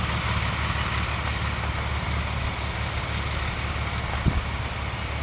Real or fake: real